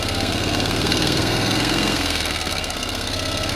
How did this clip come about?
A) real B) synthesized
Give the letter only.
B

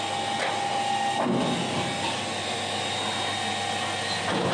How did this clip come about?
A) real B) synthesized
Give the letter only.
A